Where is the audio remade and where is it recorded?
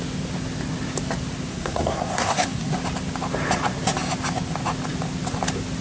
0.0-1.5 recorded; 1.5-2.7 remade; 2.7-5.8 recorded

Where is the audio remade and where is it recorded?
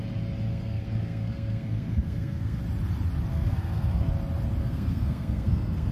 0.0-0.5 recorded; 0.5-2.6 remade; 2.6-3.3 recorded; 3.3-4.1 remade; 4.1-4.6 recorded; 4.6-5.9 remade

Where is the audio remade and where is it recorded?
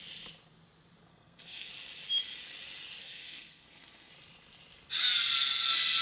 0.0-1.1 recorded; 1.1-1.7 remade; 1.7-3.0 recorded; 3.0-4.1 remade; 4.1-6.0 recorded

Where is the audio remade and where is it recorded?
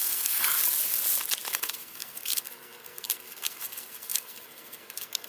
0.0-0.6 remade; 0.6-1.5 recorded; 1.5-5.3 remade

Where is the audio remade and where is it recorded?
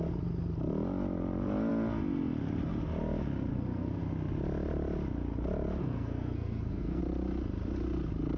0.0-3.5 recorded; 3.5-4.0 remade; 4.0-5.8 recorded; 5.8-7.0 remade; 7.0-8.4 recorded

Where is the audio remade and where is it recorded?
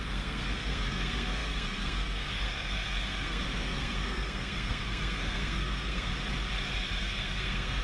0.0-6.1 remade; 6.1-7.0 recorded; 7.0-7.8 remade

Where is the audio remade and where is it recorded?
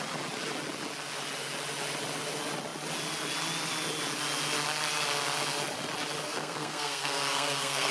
0.0-6.2 recorded; 6.2-7.9 remade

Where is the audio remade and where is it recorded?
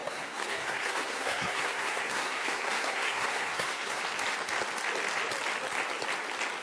0.0-4.0 remade; 4.0-6.6 recorded